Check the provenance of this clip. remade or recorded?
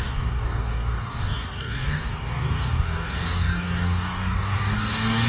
remade